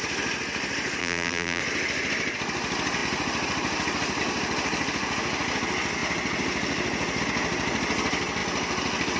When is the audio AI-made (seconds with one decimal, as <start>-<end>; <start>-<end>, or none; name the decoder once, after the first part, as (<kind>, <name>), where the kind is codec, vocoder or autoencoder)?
1.0-1.6 (vocoder, BigVGAN v2)